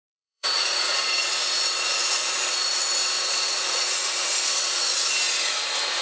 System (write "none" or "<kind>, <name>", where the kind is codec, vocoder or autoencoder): vocoder, Vocos